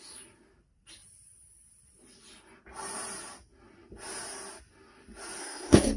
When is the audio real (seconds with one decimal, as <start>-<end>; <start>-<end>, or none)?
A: 0.0-5.4